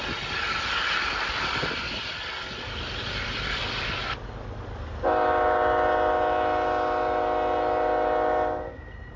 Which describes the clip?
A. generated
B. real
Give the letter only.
B